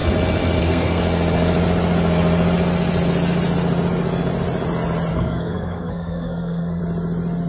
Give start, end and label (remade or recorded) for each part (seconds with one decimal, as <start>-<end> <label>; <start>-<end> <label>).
0.0-0.6 recorded; 0.6-1.0 remade; 1.0-5.1 recorded; 5.1-6.8 remade; 6.8-7.5 recorded